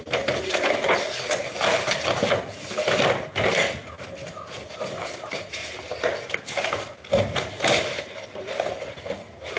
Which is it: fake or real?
real